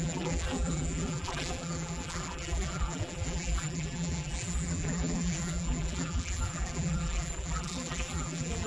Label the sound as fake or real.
fake